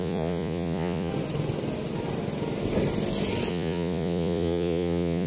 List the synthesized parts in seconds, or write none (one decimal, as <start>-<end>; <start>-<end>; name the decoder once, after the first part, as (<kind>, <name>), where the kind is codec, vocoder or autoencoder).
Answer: 0.0-1.1 (vocoder, Vocos); 3.5-5.3